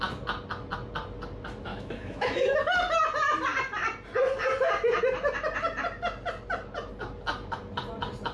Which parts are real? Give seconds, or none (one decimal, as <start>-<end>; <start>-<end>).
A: 0.0-1.7; 2.6-8.3